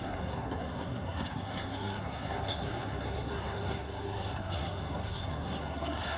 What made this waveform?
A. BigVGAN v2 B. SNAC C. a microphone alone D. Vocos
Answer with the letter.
B